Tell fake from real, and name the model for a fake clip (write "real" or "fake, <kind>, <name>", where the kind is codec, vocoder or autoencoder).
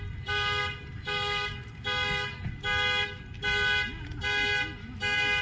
real